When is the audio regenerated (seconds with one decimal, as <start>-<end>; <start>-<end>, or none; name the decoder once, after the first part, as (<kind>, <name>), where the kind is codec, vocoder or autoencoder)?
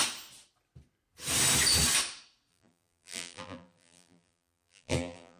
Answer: 2.5-5.4 (vocoder, BigVGAN v2)